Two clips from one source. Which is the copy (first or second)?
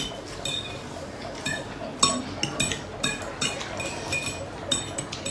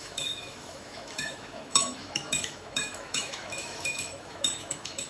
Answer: second